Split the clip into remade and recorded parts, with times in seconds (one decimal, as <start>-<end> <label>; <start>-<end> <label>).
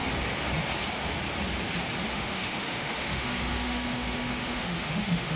0.0-2.1 recorded; 2.1-5.4 remade